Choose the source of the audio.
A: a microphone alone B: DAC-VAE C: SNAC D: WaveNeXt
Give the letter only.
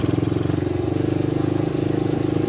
A